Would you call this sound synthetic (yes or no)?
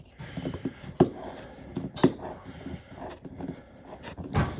no